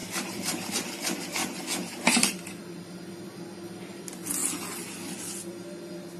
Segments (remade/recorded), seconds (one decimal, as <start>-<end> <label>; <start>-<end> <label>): 0.0-0.7 remade; 0.7-1.4 recorded; 1.4-4.0 remade; 4.0-6.2 recorded